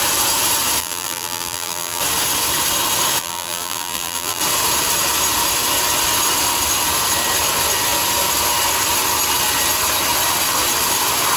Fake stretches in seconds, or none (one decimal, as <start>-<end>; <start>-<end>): 0.8-2.0; 3.2-4.4